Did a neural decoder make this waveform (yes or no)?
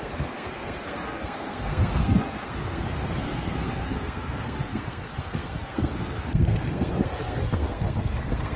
yes